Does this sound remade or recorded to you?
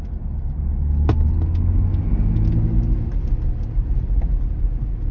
recorded